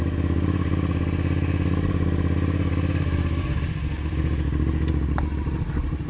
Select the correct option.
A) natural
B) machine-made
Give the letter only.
A